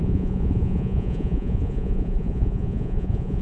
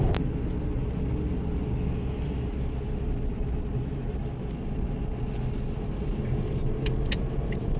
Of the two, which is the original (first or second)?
second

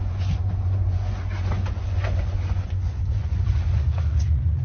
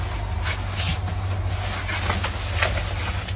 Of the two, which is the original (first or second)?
second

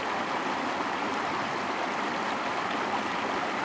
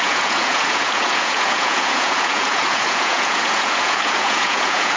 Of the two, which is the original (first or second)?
first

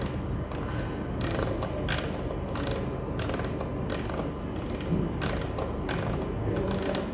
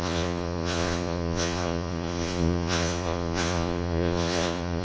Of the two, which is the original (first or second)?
first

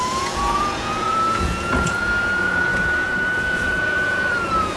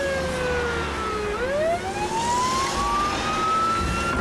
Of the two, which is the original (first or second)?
second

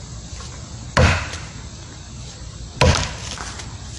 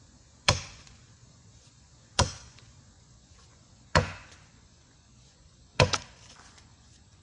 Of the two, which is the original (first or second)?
first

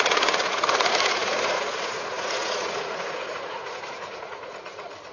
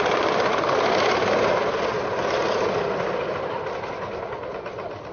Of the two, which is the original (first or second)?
second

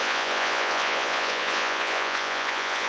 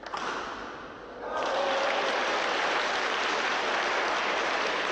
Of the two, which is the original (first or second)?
second